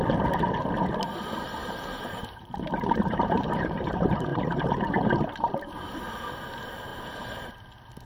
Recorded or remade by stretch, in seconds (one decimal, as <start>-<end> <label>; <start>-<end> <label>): 0.0-1.6 recorded; 1.6-3.9 remade; 3.9-4.3 recorded; 4.3-5.5 remade; 5.5-6.9 recorded; 6.9-7.5 remade; 7.5-8.1 recorded